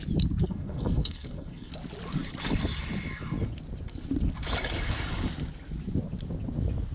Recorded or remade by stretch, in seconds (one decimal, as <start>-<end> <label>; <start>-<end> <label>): 0.0-0.4 recorded; 0.4-1.7 remade; 1.7-6.9 recorded